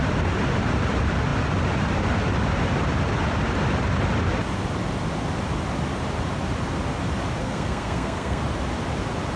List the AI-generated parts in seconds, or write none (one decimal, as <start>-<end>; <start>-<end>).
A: 7.4-8.4

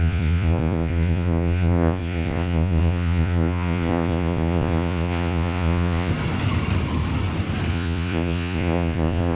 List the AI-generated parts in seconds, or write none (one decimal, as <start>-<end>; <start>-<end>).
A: 0.0-6.1; 7.7-9.4

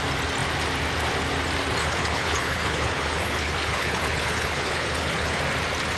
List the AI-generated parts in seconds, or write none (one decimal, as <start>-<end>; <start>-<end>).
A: 1.8-5.4

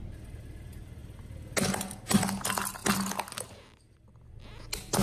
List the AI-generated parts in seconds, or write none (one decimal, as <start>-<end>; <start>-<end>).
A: none